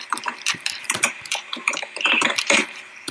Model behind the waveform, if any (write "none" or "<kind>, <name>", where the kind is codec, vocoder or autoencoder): vocoder, BigVGAN v2